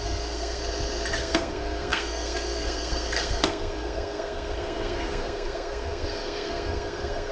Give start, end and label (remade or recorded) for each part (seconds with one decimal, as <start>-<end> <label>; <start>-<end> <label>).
0.0-0.6 remade; 0.6-1.1 recorded; 1.1-7.3 remade